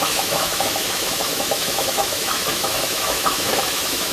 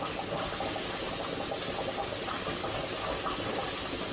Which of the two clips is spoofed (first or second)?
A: first